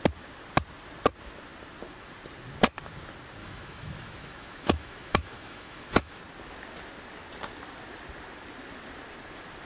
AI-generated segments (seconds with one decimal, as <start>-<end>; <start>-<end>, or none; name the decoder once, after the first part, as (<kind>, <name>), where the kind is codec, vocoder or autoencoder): 3.4-6.2 (autoencoder, DAC-VAE)